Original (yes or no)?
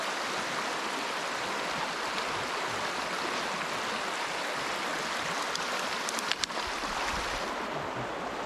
yes